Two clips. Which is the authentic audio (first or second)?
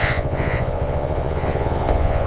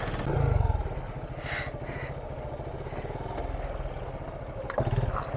second